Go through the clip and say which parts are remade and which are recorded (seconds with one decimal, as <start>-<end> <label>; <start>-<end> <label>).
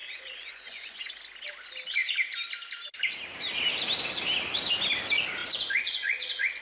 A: 0.0-1.1 remade; 1.1-5.4 recorded; 5.4-6.6 remade